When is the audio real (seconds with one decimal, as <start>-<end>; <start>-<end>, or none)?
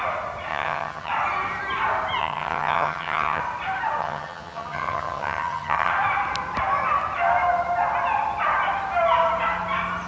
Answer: 0.0-0.5; 1.1-2.2; 3.4-4.0; 5.9-10.1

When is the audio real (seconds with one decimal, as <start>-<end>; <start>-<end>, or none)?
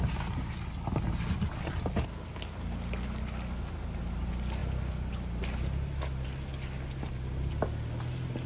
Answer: 0.0-8.5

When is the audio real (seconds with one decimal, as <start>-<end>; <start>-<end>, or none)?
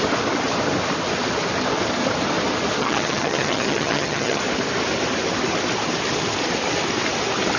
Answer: 0.0-2.8; 4.4-7.6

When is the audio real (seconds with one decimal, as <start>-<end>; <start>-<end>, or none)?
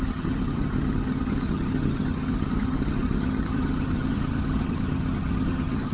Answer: none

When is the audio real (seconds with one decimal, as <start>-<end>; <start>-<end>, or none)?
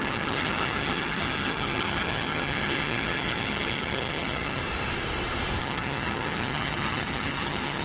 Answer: 4.6-5.6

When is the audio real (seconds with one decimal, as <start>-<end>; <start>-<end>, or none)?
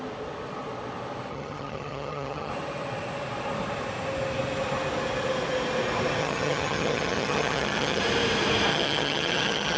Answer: 0.0-1.3; 2.5-6.2; 8.0-8.7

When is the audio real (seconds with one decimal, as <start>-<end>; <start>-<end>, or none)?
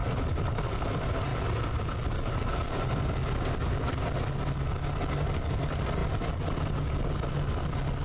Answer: 0.0-8.0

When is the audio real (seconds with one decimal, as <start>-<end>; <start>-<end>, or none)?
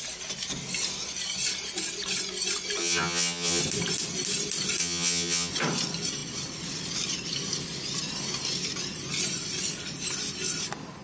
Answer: 0.0-2.8; 3.6-4.8; 5.5-11.0